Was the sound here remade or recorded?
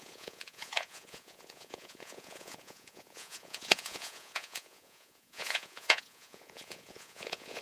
remade